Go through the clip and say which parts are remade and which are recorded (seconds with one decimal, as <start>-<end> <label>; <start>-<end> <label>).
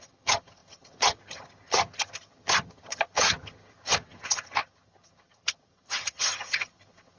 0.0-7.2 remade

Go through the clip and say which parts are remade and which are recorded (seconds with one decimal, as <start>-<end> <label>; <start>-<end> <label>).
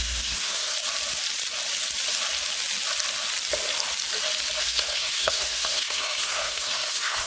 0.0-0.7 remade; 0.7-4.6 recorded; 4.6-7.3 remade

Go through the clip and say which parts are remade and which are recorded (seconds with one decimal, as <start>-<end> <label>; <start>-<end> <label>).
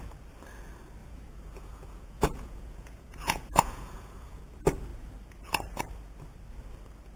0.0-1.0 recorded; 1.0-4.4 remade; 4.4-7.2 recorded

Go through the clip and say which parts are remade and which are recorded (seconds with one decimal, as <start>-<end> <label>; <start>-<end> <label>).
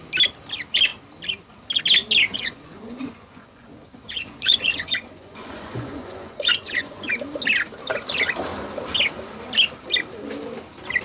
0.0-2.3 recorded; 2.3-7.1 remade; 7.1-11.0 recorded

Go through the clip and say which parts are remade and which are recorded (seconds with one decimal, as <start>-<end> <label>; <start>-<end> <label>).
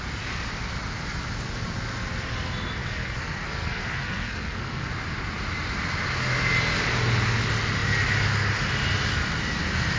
0.0-2.8 recorded; 2.8-4.9 remade; 4.9-10.0 recorded